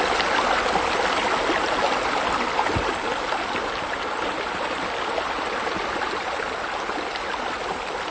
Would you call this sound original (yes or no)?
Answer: yes